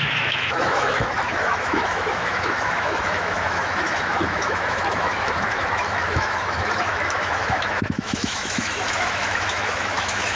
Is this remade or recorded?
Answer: remade